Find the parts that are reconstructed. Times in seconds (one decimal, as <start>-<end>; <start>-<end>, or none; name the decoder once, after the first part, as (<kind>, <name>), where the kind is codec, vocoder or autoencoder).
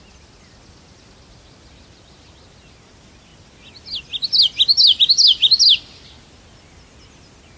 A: none